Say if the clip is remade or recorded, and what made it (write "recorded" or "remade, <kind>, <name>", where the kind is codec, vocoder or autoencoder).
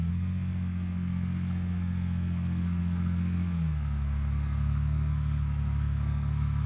remade, codec, SNAC